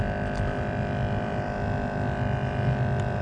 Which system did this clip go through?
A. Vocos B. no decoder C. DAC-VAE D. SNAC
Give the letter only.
B